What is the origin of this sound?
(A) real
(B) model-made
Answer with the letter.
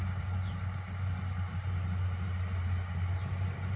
A